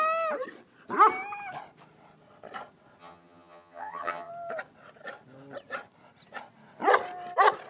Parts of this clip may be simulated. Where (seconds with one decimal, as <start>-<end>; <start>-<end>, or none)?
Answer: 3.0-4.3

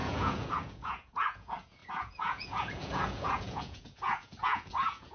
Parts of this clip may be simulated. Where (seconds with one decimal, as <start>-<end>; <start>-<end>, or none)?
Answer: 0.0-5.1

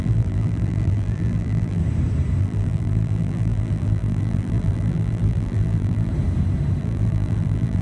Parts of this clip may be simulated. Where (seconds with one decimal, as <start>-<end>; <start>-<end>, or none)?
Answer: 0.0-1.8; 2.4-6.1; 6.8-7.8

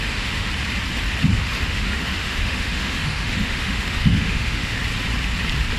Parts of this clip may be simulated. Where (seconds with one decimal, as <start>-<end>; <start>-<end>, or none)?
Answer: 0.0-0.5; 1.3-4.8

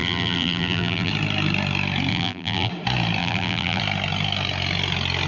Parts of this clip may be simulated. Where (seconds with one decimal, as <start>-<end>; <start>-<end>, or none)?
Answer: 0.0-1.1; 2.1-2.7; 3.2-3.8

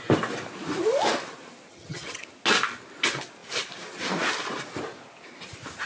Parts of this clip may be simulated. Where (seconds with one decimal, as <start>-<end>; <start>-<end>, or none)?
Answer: 1.7-2.2